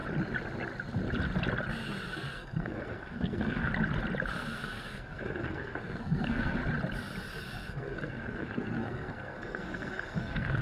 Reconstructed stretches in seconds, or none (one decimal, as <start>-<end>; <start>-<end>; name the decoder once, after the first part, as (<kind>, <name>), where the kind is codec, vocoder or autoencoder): 2.1-3.7 (codec, SNAC); 4.3-6.6; 7.3-10.6